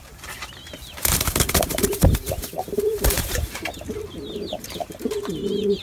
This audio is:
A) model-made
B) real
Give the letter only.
A